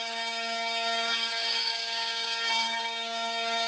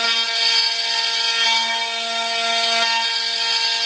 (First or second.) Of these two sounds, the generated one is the first